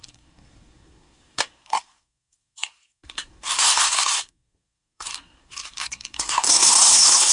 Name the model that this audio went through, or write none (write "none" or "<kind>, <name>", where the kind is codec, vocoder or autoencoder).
codec, SNAC